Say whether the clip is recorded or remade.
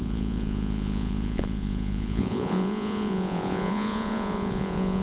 remade